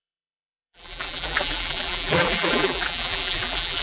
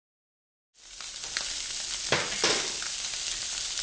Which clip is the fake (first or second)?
first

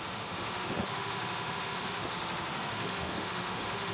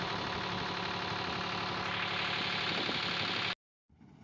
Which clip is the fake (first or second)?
first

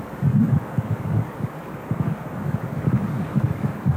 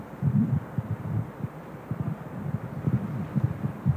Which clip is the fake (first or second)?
first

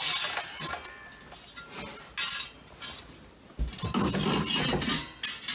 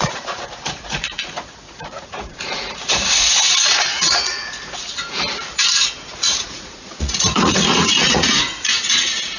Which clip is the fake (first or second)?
second